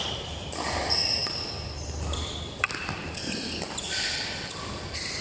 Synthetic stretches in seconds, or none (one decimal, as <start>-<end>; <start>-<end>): 0.0-5.2